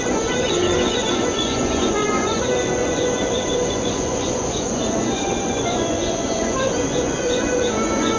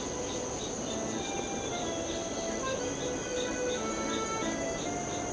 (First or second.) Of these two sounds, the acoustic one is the second